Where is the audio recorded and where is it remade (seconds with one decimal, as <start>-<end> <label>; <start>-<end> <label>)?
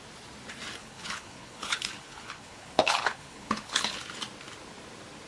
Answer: 0.0-0.8 recorded; 0.8-4.0 remade; 4.0-5.3 recorded